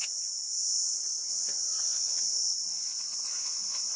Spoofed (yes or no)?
yes